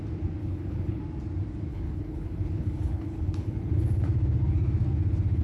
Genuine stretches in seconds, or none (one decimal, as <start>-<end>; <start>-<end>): 0.0-0.4; 1.0-1.7; 4.0-5.4